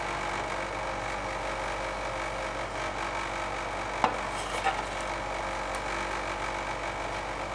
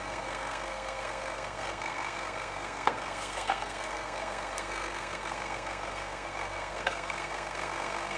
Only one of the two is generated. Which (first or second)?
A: second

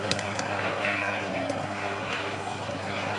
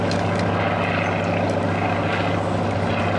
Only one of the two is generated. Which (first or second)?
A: first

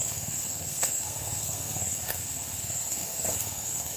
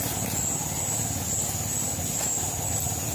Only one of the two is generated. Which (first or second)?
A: first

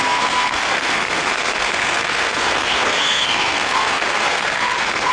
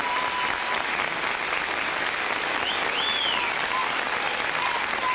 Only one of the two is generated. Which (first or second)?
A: first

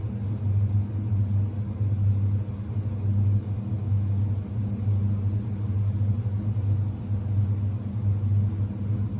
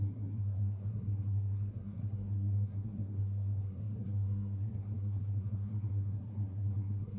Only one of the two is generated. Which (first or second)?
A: second